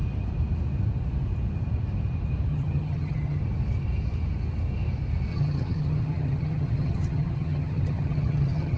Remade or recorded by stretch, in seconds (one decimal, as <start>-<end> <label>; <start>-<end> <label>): 0.0-2.5 recorded; 2.5-3.4 remade; 3.4-5.3 recorded; 5.3-8.8 remade